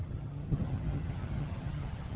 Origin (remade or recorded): remade